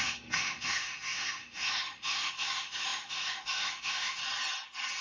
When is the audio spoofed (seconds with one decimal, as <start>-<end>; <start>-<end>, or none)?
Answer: 0.0-4.2